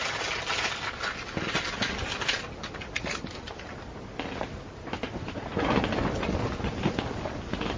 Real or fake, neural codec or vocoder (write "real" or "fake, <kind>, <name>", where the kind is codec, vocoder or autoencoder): real